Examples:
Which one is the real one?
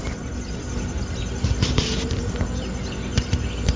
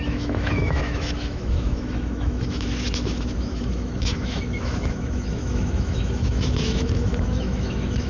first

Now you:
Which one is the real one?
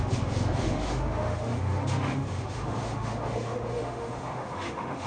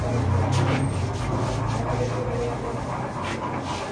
second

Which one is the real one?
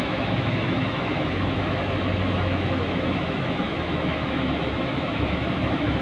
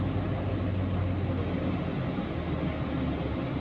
second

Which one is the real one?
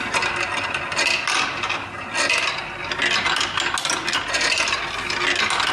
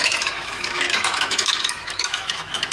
first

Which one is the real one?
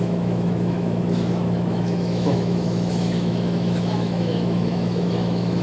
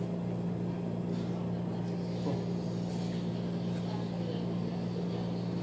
second